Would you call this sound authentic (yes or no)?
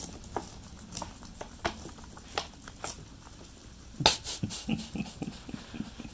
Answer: yes